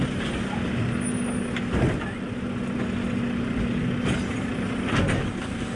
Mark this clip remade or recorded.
recorded